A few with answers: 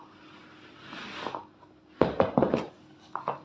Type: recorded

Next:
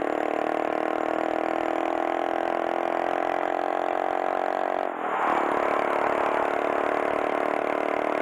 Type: recorded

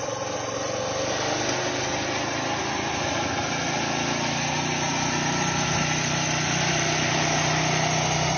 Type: recorded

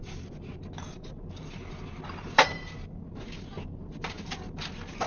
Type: recorded